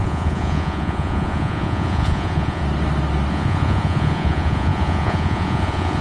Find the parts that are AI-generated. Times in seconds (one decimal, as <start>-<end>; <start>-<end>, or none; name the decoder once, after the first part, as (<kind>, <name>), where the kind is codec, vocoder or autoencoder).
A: 0.0-2.6 (vocoder, Vocos); 3.3-6.0